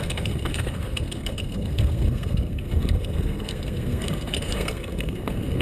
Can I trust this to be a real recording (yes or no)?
no